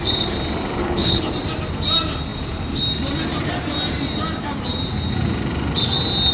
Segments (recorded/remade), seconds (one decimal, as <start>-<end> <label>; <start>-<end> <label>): 0.0-0.8 recorded; 0.8-1.3 remade; 1.3-6.3 recorded